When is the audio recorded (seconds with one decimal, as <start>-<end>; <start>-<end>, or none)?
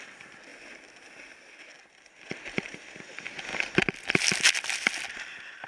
0.0-5.7